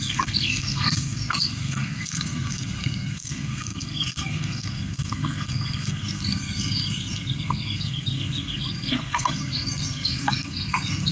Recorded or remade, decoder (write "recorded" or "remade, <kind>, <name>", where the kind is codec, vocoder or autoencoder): remade, codec, SNAC